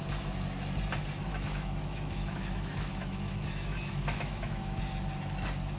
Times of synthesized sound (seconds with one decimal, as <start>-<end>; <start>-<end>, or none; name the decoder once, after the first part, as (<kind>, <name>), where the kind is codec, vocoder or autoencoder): 1.3-4.8 (autoencoder, DAC-VAE)